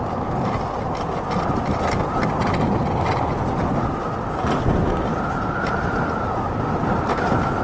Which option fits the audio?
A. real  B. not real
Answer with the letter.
A